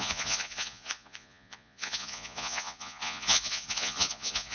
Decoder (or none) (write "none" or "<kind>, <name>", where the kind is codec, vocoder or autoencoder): vocoder, Vocos